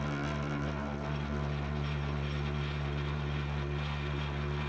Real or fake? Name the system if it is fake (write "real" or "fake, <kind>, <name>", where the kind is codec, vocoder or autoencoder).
real